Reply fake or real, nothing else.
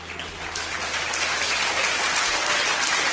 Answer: real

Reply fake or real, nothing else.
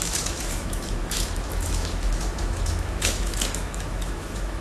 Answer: fake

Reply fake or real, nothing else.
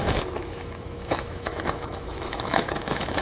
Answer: fake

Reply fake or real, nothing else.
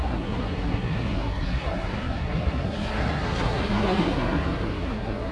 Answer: fake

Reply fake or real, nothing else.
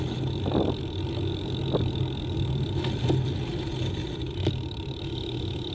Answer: real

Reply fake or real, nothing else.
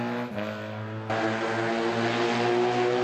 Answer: real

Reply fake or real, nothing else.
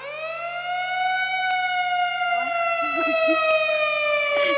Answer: real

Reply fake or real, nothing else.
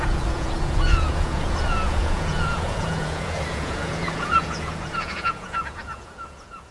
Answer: fake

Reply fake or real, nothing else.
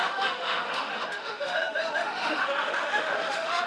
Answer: fake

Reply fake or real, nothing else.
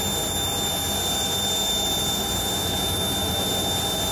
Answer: real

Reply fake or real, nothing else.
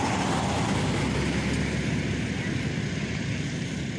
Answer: real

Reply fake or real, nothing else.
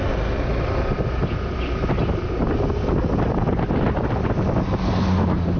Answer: real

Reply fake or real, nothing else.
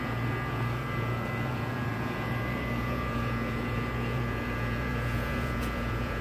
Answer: fake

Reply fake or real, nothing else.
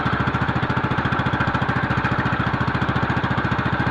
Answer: real